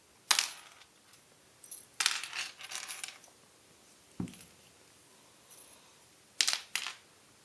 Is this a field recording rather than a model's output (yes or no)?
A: yes